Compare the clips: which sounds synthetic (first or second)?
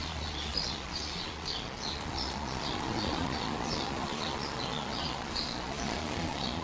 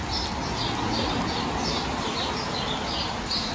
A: first